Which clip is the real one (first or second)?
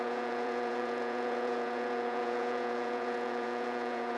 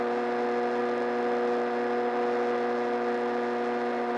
second